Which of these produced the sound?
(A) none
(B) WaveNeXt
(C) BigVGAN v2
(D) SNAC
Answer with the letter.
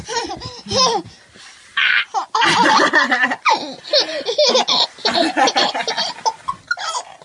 A